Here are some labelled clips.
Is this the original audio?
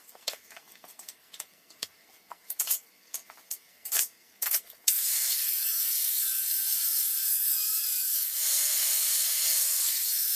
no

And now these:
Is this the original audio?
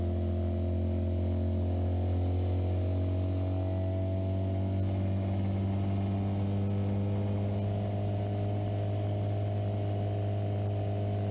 yes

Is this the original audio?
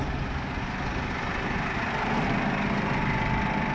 yes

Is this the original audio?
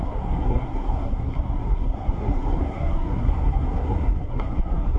no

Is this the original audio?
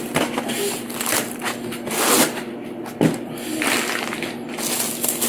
yes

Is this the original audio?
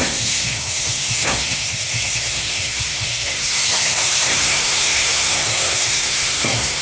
no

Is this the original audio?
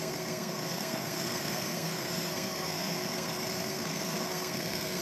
no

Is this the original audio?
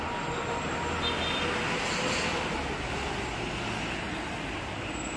yes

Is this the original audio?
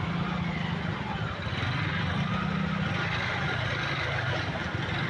yes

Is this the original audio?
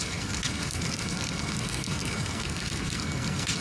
no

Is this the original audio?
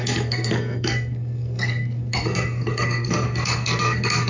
no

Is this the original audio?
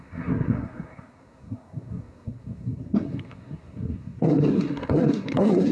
no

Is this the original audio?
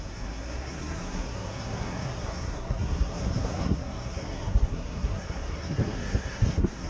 no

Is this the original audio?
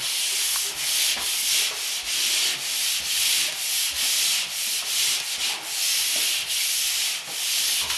yes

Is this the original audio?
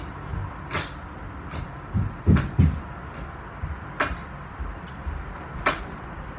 yes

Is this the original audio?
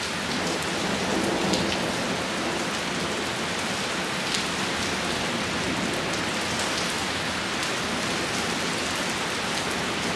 yes